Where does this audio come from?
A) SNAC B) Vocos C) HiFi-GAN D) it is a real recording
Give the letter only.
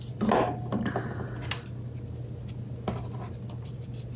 D